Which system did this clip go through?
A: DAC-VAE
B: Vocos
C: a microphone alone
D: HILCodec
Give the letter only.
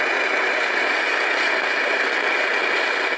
C